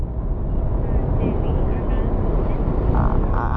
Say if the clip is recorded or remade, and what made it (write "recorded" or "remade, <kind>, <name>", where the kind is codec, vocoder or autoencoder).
recorded